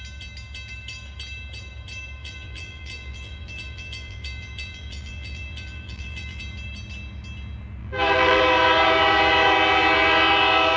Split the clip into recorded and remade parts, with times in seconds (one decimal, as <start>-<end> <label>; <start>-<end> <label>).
0.0-2.2 recorded; 2.2-6.4 remade; 6.4-7.8 recorded; 7.8-8.4 remade; 8.4-10.8 recorded